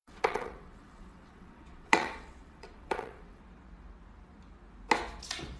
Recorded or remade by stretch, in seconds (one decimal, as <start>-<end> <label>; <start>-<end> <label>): 0.0-3.4 remade; 3.4-5.6 recorded